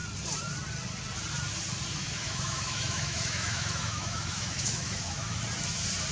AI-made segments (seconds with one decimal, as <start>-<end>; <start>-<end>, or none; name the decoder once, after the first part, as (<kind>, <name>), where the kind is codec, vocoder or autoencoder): 1.9-5.4 (autoencoder, DAC-VAE)